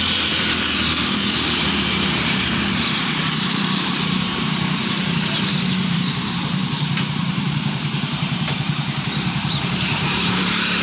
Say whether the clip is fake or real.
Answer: fake